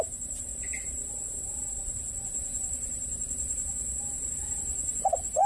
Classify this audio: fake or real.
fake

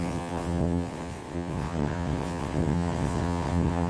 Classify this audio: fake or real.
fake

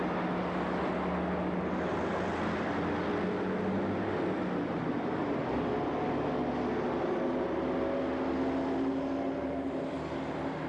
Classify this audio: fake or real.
real